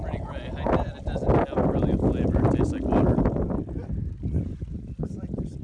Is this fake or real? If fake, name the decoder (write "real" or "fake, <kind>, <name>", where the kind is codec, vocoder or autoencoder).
real